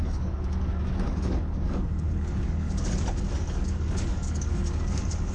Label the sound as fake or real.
fake